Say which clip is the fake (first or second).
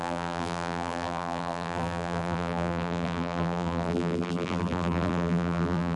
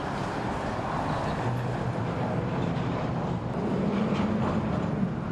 first